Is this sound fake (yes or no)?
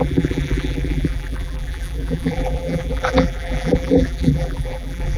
yes